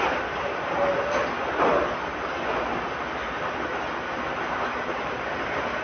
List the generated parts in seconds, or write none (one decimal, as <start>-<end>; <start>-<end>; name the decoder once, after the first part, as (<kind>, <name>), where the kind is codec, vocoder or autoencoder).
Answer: none

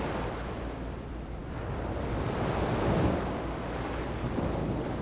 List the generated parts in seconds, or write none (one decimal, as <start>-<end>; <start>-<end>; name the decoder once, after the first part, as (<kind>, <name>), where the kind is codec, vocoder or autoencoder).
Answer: none

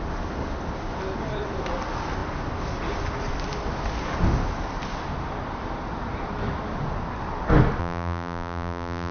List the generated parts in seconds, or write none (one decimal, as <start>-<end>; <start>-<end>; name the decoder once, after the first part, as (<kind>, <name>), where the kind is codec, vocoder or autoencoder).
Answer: 7.8-9.1 (vocoder, BigVGAN v2)

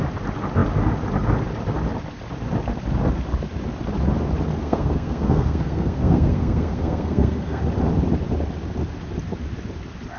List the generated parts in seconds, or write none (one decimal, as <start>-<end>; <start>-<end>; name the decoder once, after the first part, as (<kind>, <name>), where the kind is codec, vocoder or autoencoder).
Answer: 4.6-7.6 (codec, SNAC)